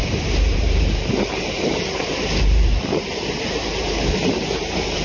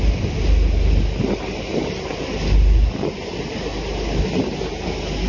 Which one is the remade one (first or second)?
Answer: first